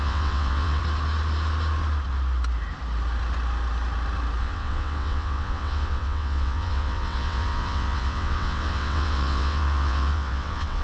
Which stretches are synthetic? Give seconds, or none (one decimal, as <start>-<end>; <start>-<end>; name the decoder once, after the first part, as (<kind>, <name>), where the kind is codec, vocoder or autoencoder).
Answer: 0.0-0.8 (vocoder, WaveNeXt); 4.4-10.8